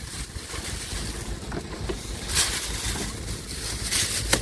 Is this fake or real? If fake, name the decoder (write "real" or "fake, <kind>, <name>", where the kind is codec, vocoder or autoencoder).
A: real